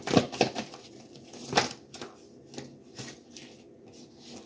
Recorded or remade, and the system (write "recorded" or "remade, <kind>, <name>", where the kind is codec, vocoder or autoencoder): recorded